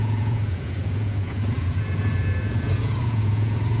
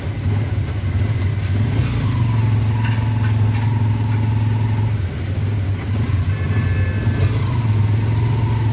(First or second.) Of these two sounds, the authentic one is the second